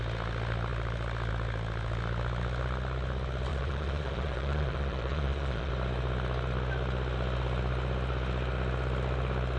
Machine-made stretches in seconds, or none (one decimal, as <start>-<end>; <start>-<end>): 3.5-5.7